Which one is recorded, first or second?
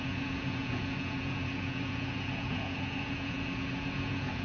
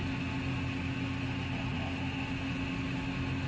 second